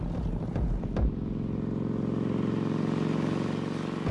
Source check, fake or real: real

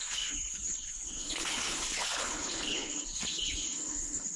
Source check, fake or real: fake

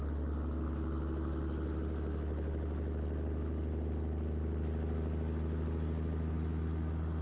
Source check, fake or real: real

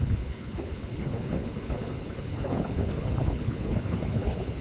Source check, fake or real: fake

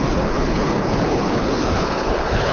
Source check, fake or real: fake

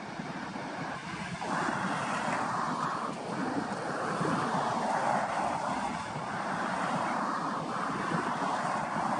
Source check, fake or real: real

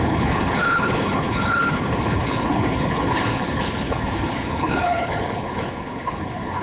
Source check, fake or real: fake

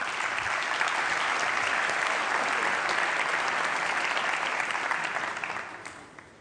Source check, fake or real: real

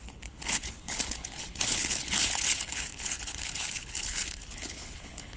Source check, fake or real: fake